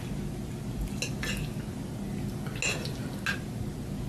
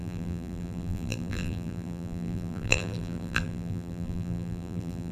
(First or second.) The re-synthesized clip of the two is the second